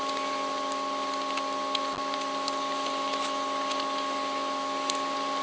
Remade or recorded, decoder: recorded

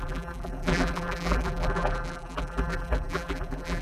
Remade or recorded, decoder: remade, vocoder, BigVGAN v2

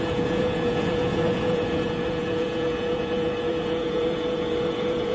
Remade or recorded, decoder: remade, vocoder, Vocos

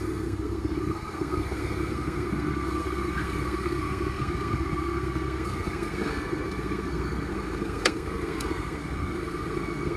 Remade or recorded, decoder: remade, codec, SNAC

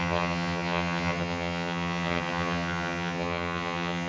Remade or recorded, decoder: remade, vocoder, HiFi-GAN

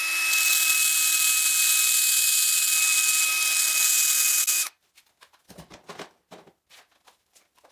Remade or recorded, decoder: recorded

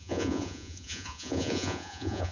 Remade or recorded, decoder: remade, vocoder, Vocos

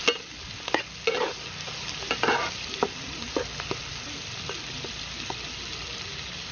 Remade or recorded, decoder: recorded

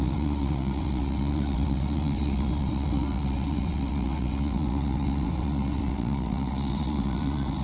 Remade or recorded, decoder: remade, vocoder, WaveNeXt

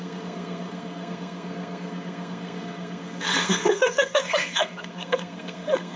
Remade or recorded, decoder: remade, codec, SNAC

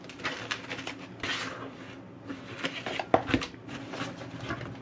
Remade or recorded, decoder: recorded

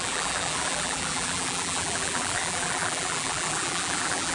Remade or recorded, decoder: remade, vocoder, BigVGAN v2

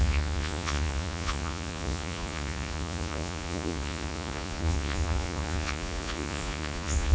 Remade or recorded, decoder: remade, vocoder, Vocos